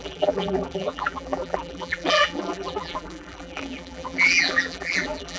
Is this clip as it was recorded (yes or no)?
no